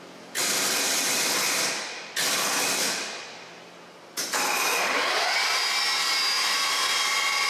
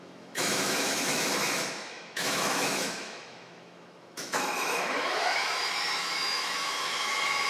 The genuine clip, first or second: first